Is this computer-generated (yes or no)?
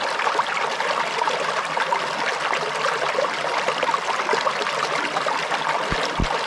no